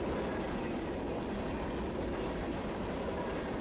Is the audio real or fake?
real